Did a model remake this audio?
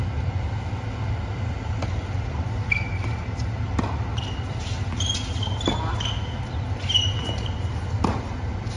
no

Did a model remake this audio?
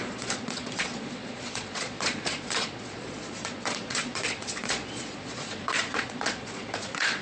yes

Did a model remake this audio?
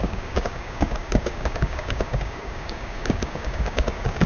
yes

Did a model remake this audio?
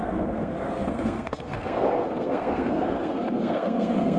yes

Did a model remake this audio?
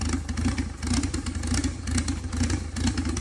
no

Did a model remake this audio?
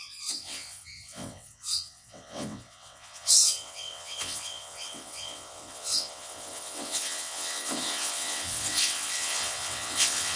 yes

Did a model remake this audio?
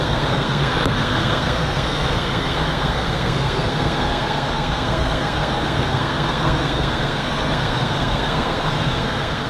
yes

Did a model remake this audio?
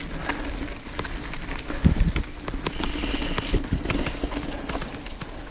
no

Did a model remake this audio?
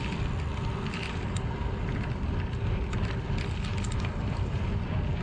no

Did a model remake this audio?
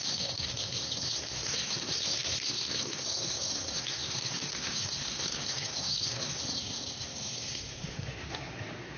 yes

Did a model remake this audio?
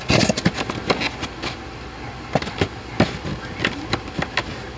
no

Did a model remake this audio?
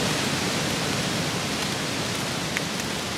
no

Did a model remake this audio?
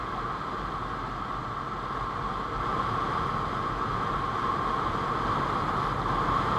no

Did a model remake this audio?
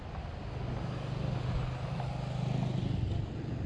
no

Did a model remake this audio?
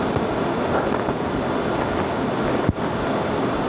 no